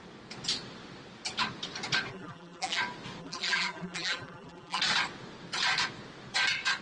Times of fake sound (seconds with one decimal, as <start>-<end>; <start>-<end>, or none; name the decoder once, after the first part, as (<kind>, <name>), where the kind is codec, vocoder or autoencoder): 2.1-2.8 (vocoder, BigVGAN v2); 3.2-4.8